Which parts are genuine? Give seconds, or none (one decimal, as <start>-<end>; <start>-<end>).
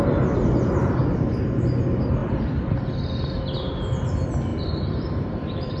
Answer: 0.0-2.2; 2.8-4.5